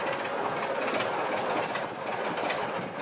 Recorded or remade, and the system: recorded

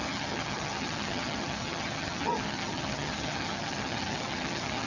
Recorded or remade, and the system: remade, vocoder, HiFi-GAN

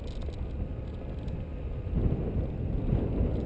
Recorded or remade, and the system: recorded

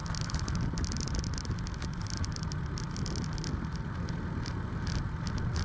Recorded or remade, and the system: recorded